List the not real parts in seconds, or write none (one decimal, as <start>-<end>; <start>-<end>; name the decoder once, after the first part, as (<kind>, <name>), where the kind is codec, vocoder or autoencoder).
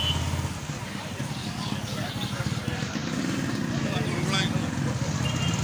1.4-2.1 (codec, DAC)